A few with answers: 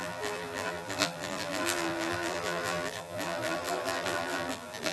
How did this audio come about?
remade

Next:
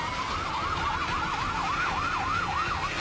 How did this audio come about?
recorded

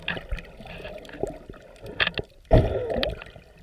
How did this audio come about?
recorded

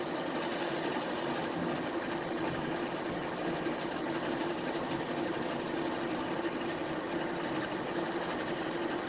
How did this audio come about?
recorded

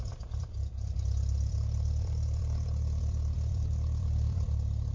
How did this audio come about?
remade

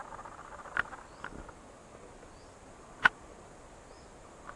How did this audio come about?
recorded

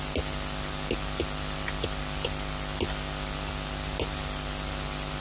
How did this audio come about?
recorded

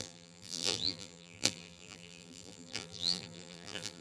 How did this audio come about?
remade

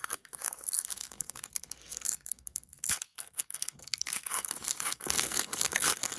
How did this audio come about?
remade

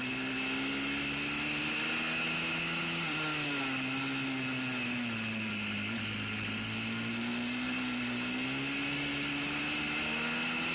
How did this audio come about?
recorded